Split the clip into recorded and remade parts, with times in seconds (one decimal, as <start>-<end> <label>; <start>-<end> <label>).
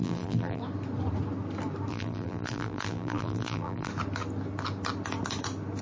0.0-0.6 remade; 0.6-1.9 recorded; 1.9-3.9 remade; 3.9-5.8 recorded